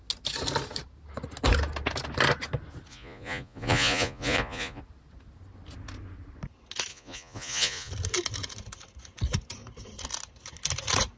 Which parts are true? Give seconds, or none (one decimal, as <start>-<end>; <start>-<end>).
0.0-2.9; 4.8-6.9; 7.9-11.2